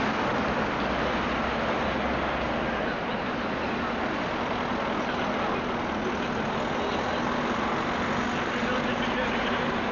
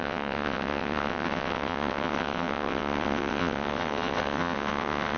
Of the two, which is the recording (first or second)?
first